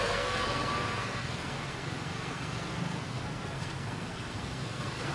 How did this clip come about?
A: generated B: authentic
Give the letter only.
A